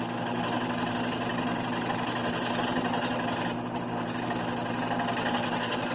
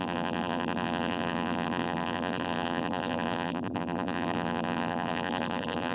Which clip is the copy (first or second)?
second